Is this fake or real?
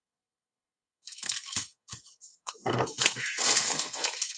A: fake